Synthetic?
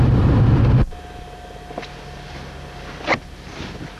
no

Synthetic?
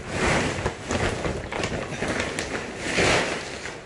no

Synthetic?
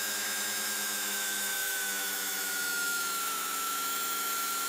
yes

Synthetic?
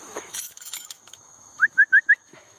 yes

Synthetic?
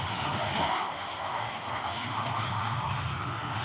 yes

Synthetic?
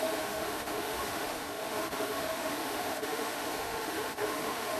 yes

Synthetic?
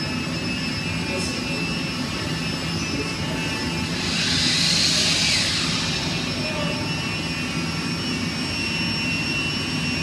no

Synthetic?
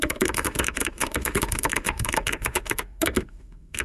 yes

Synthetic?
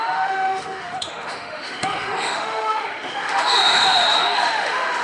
yes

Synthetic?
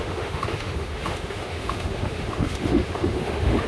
yes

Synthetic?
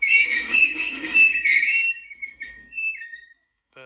yes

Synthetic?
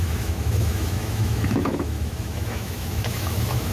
yes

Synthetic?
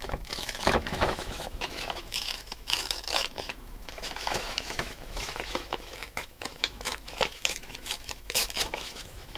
yes